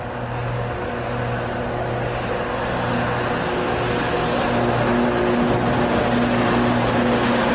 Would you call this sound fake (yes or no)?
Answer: no